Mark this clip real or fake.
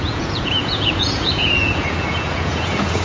fake